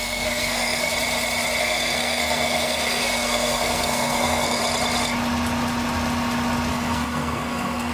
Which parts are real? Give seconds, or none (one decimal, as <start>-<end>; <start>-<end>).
0.9-1.6; 4.6-6.7